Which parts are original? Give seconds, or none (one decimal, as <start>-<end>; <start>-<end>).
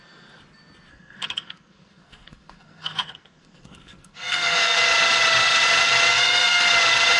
0.0-0.9; 4.8-6.1; 6.6-7.2